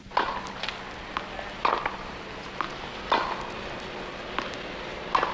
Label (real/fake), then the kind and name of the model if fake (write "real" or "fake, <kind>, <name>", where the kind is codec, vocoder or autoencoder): real